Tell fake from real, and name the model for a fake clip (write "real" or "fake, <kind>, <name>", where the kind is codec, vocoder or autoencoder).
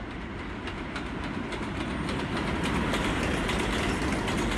real